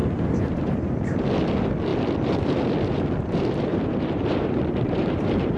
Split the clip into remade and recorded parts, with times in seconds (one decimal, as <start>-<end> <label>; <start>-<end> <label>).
0.0-1.0 remade; 1.0-3.7 recorded; 3.7-5.6 remade